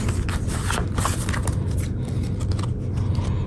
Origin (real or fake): real